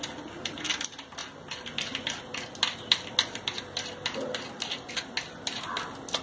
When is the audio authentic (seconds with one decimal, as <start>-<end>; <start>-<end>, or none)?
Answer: 0.0-6.2